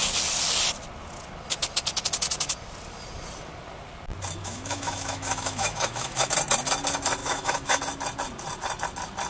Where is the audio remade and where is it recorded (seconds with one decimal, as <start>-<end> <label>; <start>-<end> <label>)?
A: 0.0-4.4 recorded; 4.4-6.3 remade; 6.3-7.2 recorded; 7.2-7.8 remade; 7.8-9.3 recorded